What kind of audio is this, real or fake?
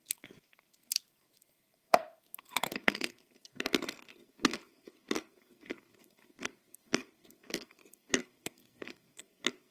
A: fake